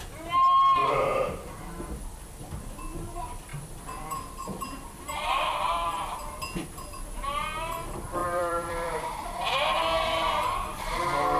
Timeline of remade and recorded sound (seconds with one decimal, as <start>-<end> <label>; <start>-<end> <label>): 0.0-3.5 recorded; 3.5-6.4 remade; 6.4-8.2 recorded; 8.2-9.0 remade; 9.0-11.4 recorded